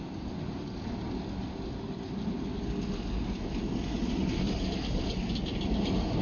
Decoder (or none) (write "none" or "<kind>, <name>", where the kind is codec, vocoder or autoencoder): none